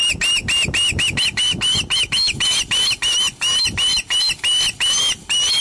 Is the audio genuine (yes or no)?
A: yes